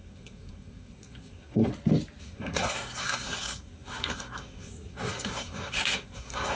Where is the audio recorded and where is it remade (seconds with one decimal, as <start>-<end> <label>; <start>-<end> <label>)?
0.0-1.7 remade; 1.7-2.2 recorded; 2.2-6.6 remade